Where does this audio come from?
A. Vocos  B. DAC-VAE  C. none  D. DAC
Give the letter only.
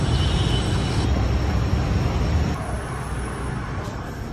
C